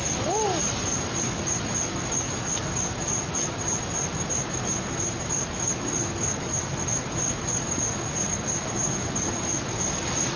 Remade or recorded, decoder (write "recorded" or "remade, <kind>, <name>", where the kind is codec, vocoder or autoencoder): recorded